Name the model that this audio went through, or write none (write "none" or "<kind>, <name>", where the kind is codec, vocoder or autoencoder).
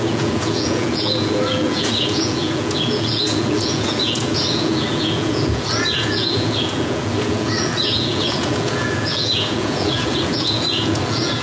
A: vocoder, Vocos